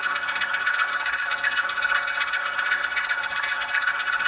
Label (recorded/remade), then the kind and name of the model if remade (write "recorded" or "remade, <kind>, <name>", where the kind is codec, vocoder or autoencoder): remade, codec, SNAC